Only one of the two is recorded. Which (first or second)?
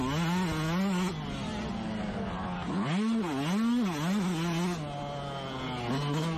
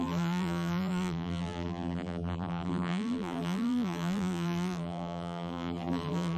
first